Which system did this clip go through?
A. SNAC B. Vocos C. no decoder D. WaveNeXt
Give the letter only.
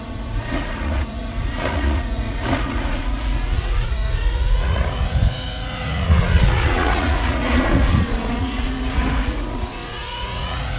B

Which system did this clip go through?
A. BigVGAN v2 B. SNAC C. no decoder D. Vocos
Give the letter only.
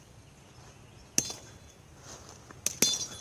C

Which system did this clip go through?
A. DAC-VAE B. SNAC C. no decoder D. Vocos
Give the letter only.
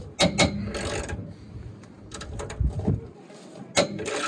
C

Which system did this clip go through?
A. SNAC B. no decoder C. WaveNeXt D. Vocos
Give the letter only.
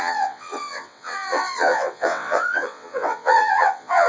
C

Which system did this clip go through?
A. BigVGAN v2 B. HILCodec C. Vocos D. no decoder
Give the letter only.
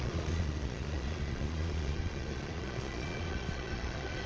C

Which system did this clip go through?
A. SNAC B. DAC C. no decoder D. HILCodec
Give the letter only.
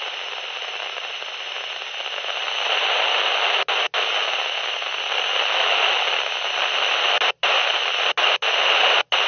C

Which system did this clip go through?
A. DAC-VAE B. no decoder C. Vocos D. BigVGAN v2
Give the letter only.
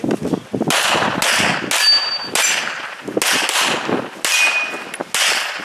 B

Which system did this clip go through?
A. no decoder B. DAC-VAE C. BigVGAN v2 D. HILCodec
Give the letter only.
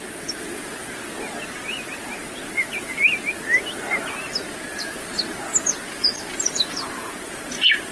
A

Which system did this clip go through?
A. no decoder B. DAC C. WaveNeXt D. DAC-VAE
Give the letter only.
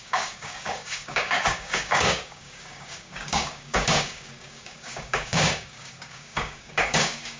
B